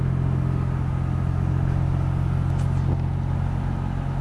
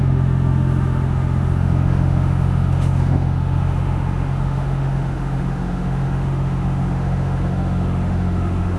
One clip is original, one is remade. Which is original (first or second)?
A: first